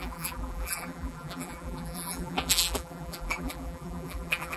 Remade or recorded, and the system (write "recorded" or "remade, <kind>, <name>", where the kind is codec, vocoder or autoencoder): remade, vocoder, BigVGAN v2